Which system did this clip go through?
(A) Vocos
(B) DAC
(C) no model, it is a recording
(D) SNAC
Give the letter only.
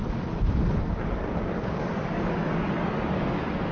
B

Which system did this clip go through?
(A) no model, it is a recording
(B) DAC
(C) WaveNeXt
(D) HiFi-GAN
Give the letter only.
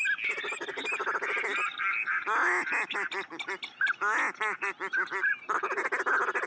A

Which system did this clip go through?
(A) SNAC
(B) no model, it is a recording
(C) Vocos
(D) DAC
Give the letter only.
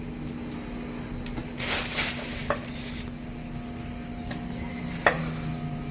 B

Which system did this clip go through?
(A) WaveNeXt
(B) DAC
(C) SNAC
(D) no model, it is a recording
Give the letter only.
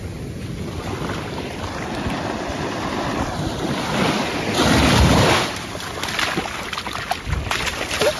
D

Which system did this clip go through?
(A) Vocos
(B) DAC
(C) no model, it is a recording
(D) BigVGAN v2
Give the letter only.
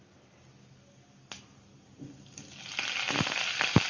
C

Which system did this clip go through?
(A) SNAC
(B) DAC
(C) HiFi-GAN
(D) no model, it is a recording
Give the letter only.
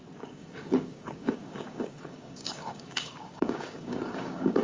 B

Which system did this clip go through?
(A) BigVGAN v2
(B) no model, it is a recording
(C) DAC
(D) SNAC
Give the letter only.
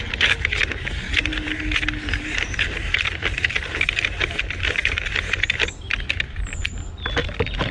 B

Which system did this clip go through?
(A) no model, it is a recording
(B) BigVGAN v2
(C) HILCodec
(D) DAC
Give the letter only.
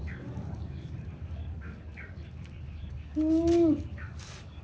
D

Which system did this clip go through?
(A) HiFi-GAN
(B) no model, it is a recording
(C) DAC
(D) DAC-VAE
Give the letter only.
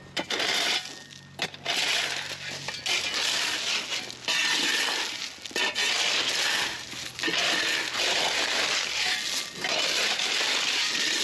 B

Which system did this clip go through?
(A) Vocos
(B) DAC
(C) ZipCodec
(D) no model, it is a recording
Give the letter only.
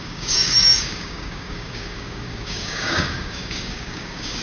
B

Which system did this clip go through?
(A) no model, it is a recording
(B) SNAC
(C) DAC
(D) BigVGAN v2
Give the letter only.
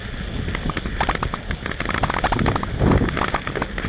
A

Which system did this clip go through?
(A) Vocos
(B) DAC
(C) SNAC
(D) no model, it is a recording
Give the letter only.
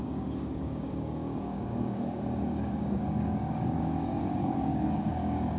B